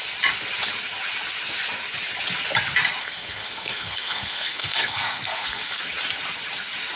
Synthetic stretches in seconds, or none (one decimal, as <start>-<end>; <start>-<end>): 3.0-5.8